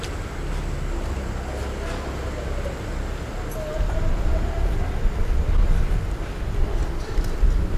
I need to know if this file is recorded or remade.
recorded